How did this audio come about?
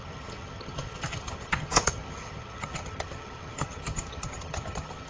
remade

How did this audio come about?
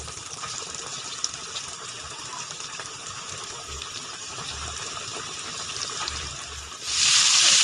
remade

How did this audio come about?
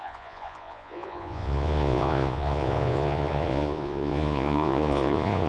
remade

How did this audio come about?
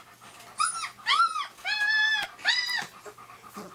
recorded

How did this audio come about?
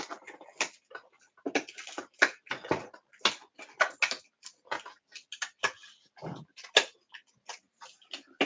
recorded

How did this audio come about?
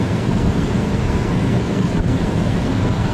remade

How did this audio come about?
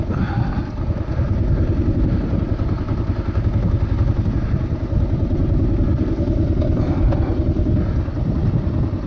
recorded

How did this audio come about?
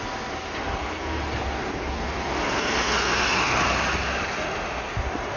recorded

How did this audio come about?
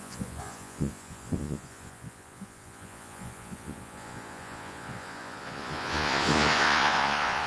remade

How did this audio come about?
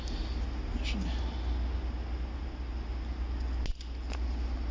recorded